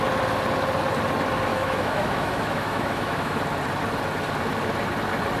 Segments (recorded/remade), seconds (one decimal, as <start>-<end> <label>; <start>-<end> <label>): 0.0-1.5 recorded; 1.5-3.4 remade; 3.4-5.4 recorded